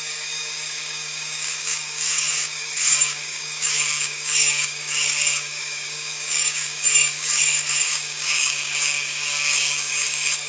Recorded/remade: remade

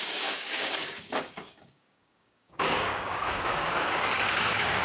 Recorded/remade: remade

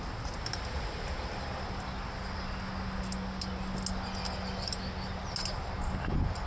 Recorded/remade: recorded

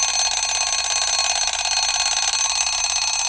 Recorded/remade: recorded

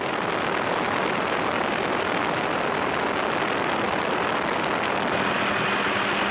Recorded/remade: recorded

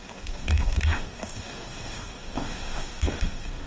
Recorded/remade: remade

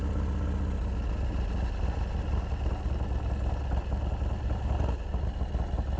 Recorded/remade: recorded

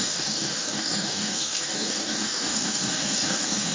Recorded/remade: remade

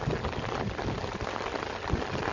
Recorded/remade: recorded